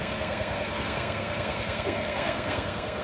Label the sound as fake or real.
fake